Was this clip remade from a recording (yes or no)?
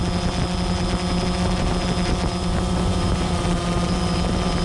no